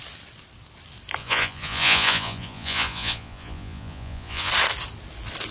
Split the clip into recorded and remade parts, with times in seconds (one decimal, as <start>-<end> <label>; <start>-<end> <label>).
0.0-1.2 recorded; 1.2-4.5 remade; 4.5-5.5 recorded